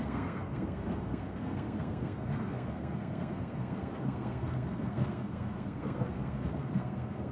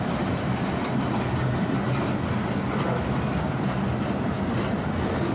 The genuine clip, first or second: second